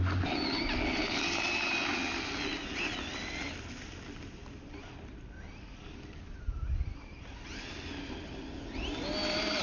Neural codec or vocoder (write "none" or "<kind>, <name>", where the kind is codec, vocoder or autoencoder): none